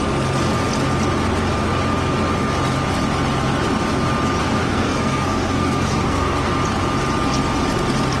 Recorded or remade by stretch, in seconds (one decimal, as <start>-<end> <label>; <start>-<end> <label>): 0.0-4.4 recorded; 4.4-6.5 remade; 6.5-8.2 recorded